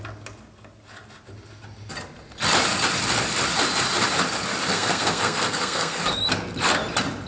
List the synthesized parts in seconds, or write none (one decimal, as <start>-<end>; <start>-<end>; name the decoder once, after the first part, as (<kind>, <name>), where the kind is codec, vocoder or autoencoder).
4.7-6.0 (codec, SNAC)